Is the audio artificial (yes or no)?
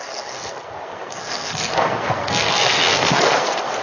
yes